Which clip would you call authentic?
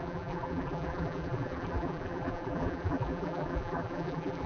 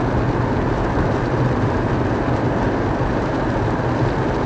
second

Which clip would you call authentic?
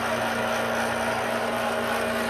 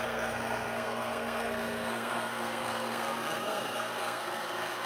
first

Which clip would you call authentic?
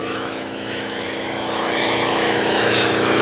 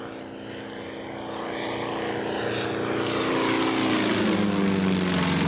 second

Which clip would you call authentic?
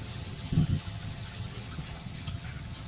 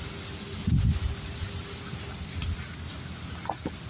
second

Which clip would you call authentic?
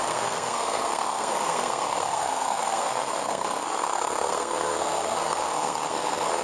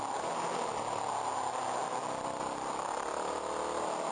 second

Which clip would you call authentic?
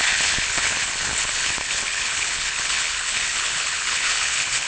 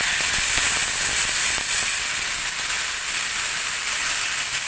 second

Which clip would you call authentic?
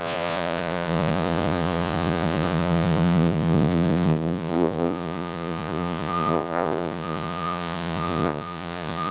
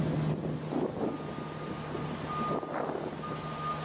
second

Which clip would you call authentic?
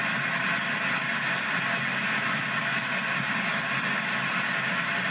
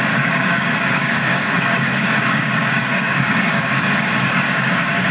first